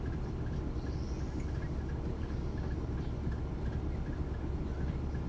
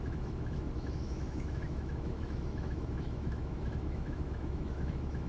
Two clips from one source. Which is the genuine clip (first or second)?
first